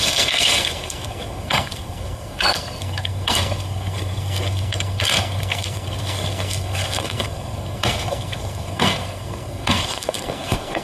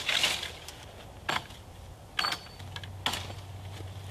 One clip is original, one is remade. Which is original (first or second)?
second